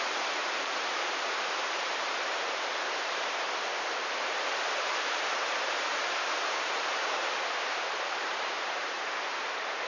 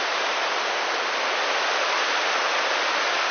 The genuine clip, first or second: second